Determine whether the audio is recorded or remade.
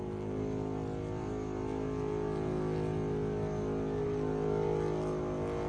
recorded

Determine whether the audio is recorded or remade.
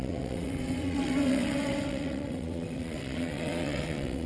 remade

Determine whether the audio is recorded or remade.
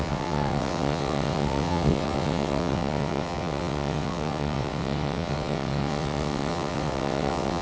remade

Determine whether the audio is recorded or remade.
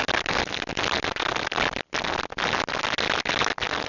recorded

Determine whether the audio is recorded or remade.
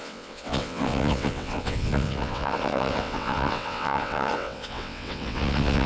remade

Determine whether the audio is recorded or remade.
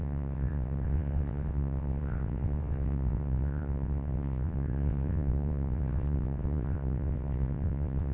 remade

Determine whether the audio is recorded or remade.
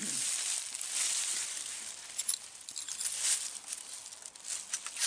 recorded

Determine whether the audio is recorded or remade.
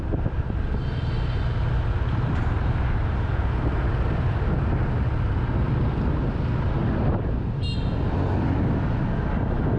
recorded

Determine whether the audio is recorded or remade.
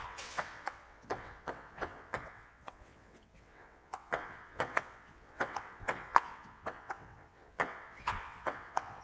remade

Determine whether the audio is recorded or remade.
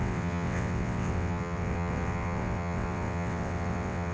remade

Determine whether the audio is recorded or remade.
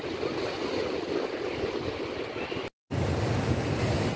recorded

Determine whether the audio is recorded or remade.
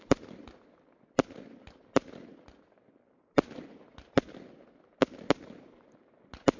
recorded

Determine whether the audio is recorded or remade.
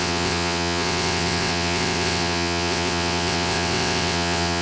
remade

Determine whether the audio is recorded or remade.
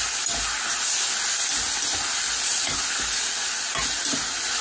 recorded